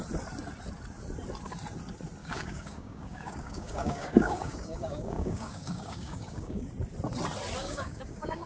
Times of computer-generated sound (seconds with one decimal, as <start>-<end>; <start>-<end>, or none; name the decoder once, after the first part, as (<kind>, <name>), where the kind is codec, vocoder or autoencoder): 2.2-6.7 (codec, DAC); 7.6-8.5